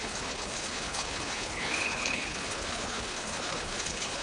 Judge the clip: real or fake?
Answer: fake